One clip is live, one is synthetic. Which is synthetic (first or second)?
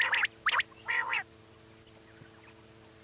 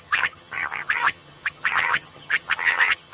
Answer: second